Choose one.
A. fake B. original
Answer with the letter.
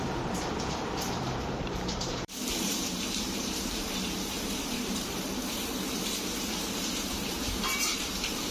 A